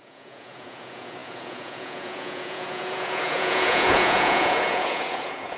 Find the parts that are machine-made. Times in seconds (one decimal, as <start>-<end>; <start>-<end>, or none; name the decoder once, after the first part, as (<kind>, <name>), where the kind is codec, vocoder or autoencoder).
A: 0.0-5.6 (vocoder, Vocos)